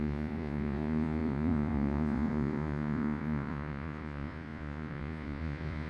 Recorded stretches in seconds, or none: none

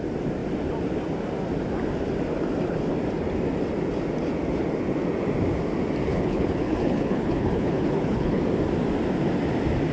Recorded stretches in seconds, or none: 0.0-6.1; 8.4-9.9

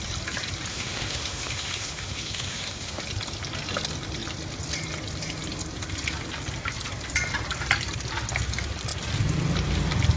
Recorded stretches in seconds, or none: 0.0-0.7; 3.0-10.2

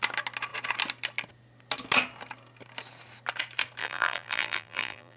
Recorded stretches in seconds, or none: 0.0-3.8

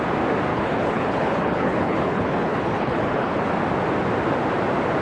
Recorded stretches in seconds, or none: 0.0-0.5; 3.5-5.0